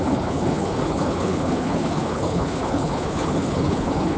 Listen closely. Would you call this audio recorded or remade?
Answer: remade